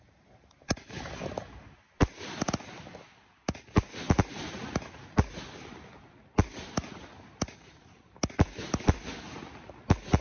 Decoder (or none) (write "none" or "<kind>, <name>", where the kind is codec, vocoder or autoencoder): none